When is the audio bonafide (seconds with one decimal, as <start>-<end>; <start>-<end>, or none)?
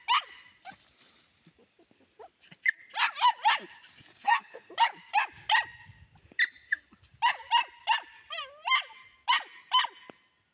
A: 0.0-4.1; 4.7-10.5